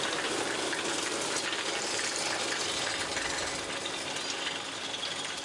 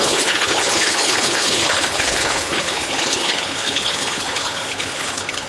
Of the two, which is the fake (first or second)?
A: second